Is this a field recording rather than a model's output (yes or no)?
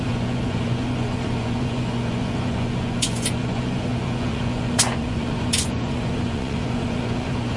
no